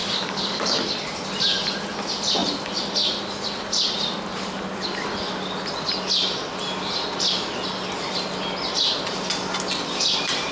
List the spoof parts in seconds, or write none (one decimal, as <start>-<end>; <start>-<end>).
0.0-0.8